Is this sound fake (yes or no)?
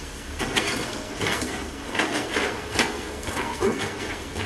yes